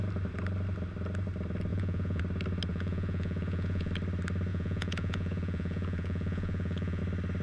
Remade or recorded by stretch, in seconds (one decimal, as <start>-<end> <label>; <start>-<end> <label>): 0.0-1.7 recorded; 1.7-2.2 remade; 2.2-2.7 recorded; 2.7-3.9 remade; 3.9-4.5 recorded; 4.5-7.0 remade; 7.0-7.4 recorded